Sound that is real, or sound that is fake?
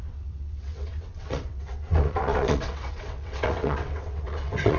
fake